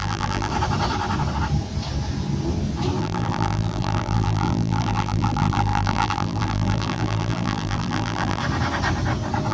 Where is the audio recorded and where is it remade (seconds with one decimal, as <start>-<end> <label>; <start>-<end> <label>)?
0.0-0.5 remade; 0.5-3.0 recorded; 3.0-8.4 remade; 8.4-9.5 recorded